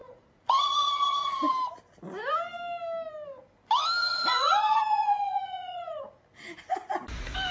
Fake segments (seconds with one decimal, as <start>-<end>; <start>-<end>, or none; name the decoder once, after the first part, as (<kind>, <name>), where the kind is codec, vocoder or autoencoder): 0.0-1.5 (vocoder, Vocos); 4.0-6.0